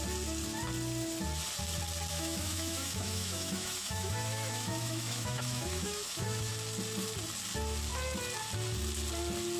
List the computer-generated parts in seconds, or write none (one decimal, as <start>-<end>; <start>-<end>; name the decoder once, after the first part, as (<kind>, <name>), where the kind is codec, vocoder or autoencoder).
2.1-6.5 (autoencoder, DAC-VAE)